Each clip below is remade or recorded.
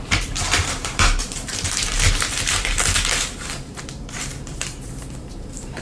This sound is remade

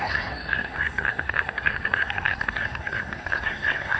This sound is remade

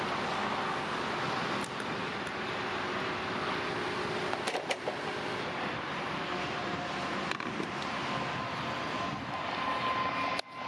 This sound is recorded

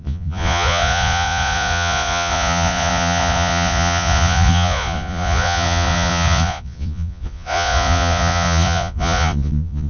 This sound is remade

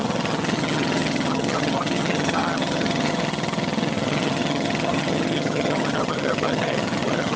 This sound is remade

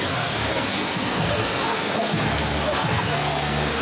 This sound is remade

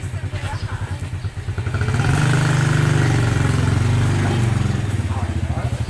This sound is recorded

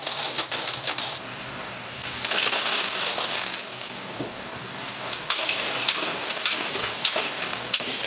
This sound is remade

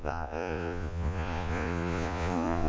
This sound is remade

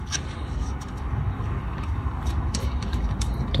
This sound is remade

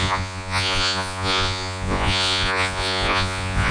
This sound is remade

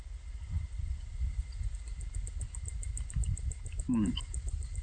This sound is recorded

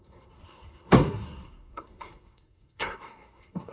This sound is remade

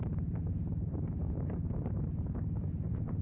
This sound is remade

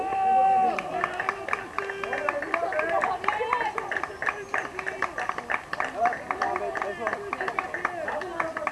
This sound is recorded